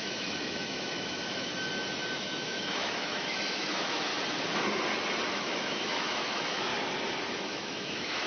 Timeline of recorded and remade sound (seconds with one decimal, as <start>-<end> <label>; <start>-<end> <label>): 0.0-1.5 remade; 1.5-2.2 recorded; 2.2-4.1 remade; 4.1-5.3 recorded; 5.3-6.7 remade; 6.7-7.3 recorded; 7.3-8.3 remade